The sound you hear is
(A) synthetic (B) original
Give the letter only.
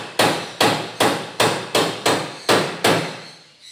B